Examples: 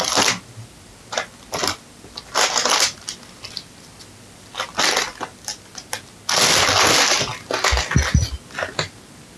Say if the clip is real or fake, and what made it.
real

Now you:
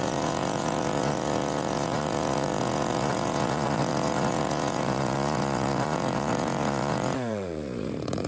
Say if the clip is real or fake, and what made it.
fake, vocoder, Vocos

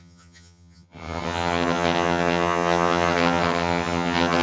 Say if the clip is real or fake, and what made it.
fake, vocoder, HiFi-GAN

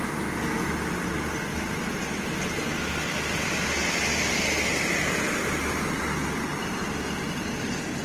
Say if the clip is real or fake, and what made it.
real